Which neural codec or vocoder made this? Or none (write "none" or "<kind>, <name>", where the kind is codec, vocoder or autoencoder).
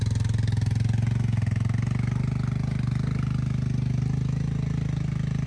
none